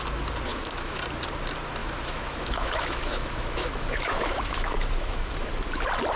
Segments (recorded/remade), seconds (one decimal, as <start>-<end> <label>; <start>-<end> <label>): 0.0-0.5 recorded; 0.5-1.0 remade; 1.0-1.8 recorded; 1.8-5.5 remade; 5.5-6.2 recorded